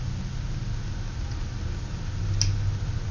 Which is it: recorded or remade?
recorded